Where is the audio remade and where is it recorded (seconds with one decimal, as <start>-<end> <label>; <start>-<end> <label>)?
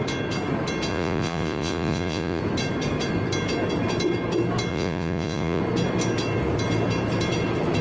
0.0-0.9 recorded; 0.9-2.4 remade; 2.4-4.7 recorded; 4.7-5.6 remade; 5.6-7.8 recorded